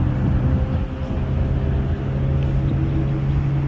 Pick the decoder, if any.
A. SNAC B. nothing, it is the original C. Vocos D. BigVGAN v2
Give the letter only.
B